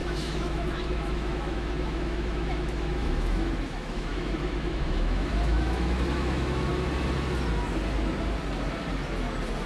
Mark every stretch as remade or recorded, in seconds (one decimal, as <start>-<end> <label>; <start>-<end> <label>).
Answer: 0.0-6.7 remade; 6.7-9.7 recorded